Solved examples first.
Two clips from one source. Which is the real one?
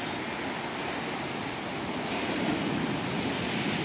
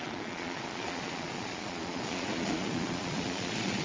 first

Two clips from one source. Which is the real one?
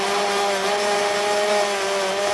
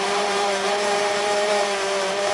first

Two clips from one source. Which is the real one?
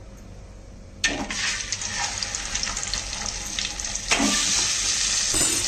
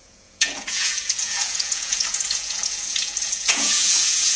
first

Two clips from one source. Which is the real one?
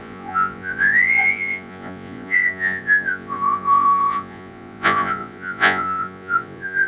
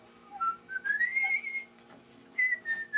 second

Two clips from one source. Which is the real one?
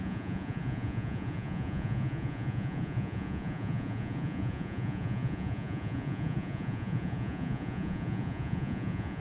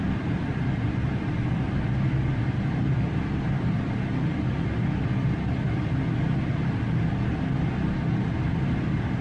second